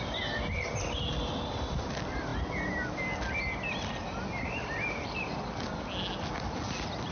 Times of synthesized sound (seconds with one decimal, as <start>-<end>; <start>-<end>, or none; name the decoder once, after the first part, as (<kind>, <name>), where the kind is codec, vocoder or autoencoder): none

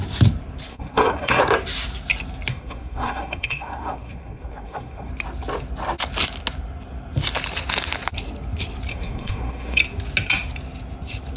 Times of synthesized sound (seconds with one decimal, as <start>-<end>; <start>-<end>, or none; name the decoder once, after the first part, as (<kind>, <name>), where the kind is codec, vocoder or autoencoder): 0.7-1.4 (codec, SNAC); 2.5-5.1; 8.9-9.8

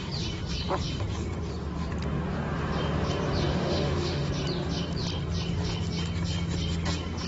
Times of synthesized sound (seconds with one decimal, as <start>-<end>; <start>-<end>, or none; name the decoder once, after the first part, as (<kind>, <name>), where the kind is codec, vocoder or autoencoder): 3.5-4.3 (autoencoder, DAC-VAE)

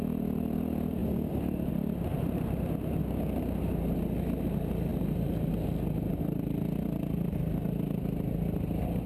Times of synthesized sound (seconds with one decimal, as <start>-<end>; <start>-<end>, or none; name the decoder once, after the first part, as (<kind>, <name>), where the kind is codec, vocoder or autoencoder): none

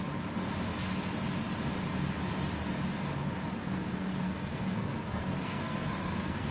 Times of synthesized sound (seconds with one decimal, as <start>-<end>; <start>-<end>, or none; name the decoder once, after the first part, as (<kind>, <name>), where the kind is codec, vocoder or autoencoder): 3.6-6.5 (codec, SNAC)